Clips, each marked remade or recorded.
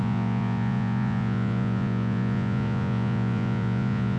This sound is remade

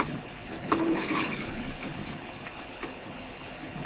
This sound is remade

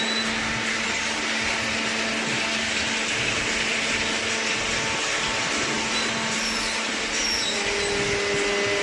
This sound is recorded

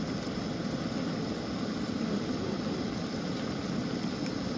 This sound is recorded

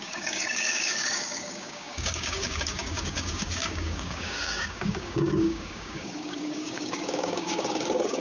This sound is remade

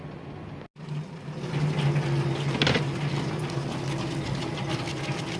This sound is recorded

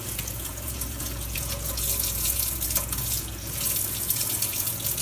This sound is remade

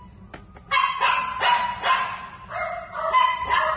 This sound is recorded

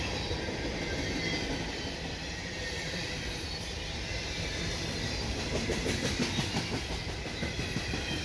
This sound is remade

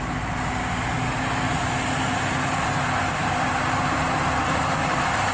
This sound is recorded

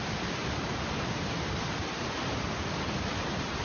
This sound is recorded